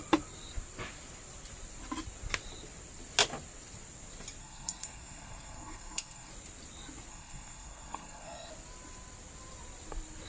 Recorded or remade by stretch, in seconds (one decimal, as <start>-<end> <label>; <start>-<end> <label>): 0.0-4.4 recorded; 4.4-6.3 remade; 6.3-7.1 recorded; 7.1-8.5 remade; 8.5-10.3 recorded